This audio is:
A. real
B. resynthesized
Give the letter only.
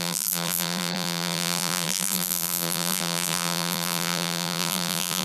B